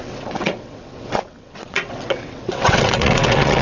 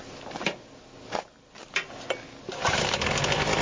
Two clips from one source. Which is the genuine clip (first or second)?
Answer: second